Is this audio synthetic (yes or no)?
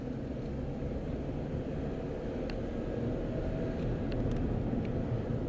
no